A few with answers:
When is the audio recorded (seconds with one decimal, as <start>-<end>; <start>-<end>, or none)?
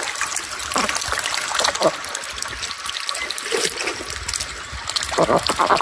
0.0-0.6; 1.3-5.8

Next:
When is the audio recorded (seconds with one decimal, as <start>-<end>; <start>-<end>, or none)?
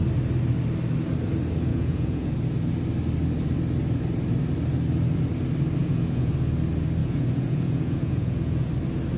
0.0-1.7; 2.3-5.8; 6.3-7.0; 8.7-9.2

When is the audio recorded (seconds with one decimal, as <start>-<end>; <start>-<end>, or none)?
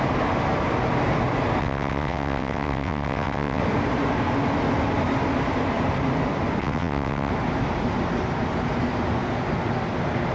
0.0-1.6; 3.6-6.6; 7.3-10.3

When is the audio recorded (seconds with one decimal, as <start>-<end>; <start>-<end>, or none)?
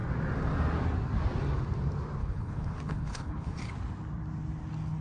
0.0-2.2; 3.6-5.0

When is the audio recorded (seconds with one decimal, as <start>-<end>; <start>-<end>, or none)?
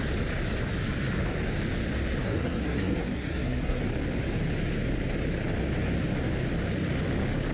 0.0-2.2; 3.8-7.5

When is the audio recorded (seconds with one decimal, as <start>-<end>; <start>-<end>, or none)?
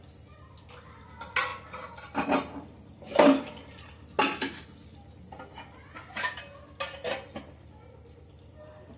0.0-9.0